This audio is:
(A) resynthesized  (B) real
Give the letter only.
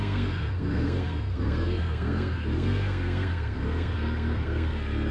A